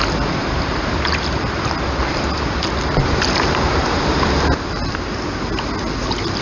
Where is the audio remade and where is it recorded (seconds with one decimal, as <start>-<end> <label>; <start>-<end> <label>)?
0.0-0.4 recorded; 0.4-4.2 remade; 4.2-6.4 recorded